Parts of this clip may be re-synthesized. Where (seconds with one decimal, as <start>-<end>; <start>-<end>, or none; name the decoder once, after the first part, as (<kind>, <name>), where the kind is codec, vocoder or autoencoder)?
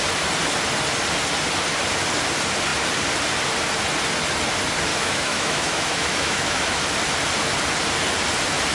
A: 4.9-6.8 (autoencoder, DAC-VAE)